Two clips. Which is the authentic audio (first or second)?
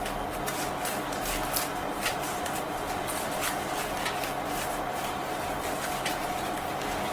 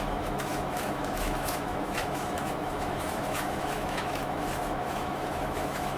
first